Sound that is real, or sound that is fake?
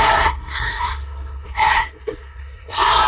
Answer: fake